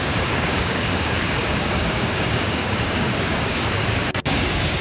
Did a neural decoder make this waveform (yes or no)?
yes